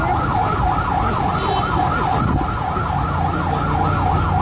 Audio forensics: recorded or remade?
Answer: recorded